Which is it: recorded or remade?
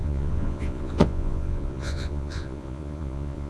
remade